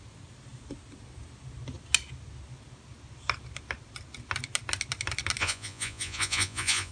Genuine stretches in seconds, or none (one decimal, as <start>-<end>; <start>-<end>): 0.0-5.4